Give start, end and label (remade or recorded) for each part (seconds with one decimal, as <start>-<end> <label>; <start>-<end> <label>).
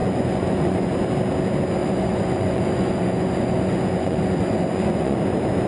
0.0-0.9 remade; 0.9-1.8 recorded; 1.8-5.2 remade; 5.2-5.7 recorded